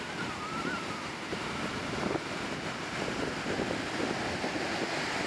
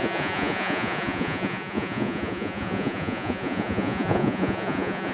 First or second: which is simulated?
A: second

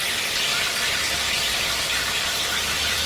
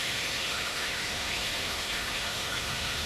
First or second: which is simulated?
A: second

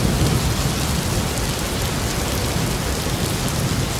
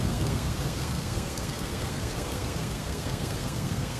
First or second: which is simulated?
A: second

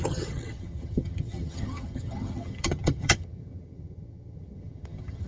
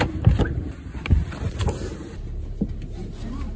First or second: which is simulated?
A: first